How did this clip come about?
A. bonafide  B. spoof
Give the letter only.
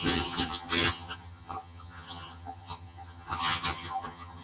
B